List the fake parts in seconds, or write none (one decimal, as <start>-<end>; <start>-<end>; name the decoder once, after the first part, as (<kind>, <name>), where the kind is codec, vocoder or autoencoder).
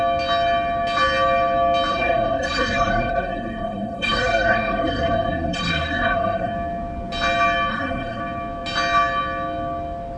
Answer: 1.9-6.5 (codec, SNAC); 7.7-8.2